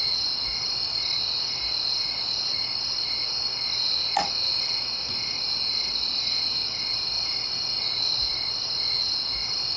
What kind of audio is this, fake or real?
real